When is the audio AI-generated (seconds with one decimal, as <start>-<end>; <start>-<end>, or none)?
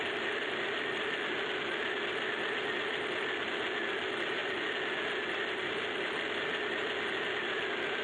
none